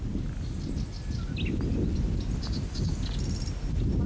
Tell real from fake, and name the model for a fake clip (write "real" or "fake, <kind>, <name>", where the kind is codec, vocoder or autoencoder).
real